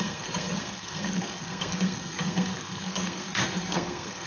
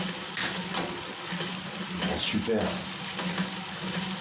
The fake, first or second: first